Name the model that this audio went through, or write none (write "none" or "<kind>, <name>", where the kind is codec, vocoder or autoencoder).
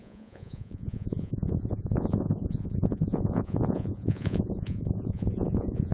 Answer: vocoder, Vocos